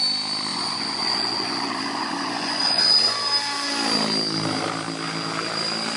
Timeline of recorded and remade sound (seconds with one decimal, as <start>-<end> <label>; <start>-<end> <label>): 0.0-0.5 recorded; 0.5-3.1 remade; 3.1-6.0 recorded